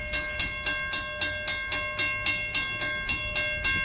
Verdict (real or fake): real